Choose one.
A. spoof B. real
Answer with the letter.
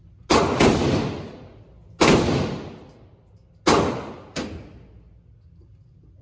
B